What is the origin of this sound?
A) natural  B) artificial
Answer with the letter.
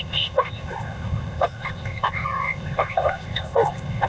B